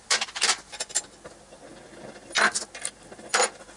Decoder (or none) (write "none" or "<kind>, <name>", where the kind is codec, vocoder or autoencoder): none